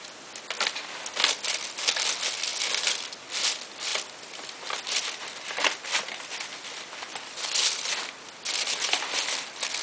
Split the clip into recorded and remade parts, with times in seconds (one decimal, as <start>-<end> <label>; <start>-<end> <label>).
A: 0.0-9.8 recorded